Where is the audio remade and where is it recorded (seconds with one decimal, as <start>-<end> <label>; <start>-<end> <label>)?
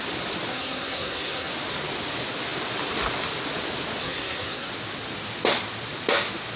0.0-0.5 recorded; 0.5-1.5 remade; 1.5-4.0 recorded; 4.0-4.7 remade; 4.7-6.6 recorded